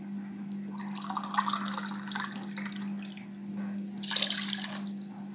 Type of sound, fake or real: real